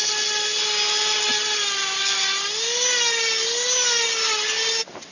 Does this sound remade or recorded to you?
recorded